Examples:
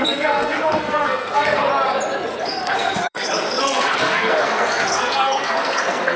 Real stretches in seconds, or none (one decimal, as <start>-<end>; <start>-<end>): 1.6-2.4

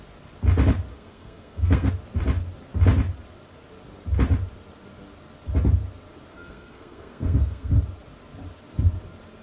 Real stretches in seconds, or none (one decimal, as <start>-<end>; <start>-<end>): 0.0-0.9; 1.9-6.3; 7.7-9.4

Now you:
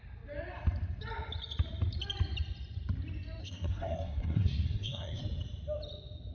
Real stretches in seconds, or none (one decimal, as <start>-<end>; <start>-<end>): 0.0-3.4; 5.2-6.3